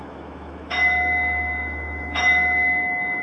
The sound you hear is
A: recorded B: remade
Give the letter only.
B